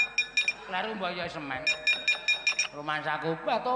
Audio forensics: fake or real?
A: real